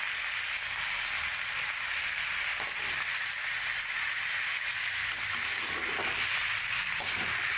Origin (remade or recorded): recorded